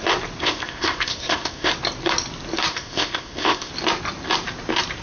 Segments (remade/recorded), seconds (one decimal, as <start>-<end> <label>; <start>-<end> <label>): 0.0-0.4 recorded; 0.4-1.7 remade; 1.7-2.7 recorded; 2.7-3.7 remade; 3.7-5.0 recorded